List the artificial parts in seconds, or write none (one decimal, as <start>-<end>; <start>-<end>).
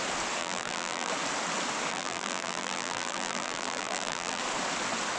0.4-1.1; 1.9-4.4